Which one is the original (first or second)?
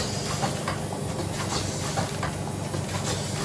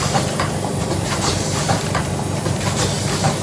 first